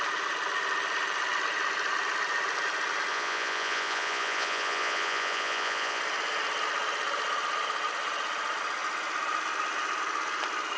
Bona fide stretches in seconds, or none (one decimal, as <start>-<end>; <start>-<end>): 0.0-3.1; 6.0-10.8